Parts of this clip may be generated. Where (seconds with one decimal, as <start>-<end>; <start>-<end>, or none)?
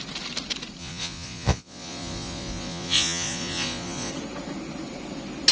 0.8-4.1